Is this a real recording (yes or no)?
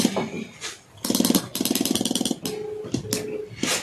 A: yes